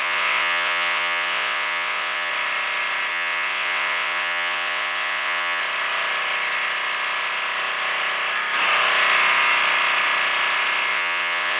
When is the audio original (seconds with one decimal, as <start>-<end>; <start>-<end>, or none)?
2.3-3.1; 5.6-10.9